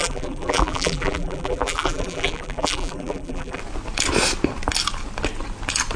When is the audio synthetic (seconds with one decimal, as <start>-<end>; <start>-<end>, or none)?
0.0-3.6